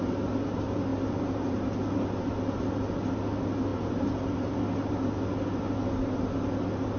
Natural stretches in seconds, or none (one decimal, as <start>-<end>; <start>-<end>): 0.0-7.0